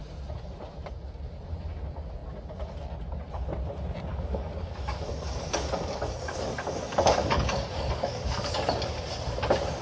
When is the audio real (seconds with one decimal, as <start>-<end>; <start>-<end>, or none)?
0.0-4.1; 8.7-9.8